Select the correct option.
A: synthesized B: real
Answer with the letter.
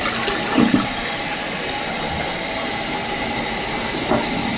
B